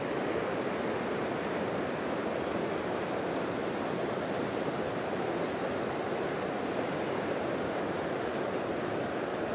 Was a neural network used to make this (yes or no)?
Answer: no